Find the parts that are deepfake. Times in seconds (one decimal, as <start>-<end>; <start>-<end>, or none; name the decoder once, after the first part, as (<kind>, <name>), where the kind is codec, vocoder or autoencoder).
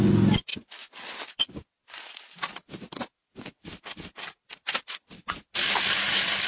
none